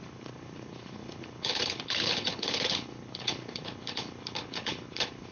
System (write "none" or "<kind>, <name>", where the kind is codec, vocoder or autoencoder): codec, HILCodec